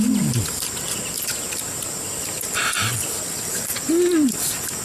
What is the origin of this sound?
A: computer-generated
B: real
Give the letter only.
B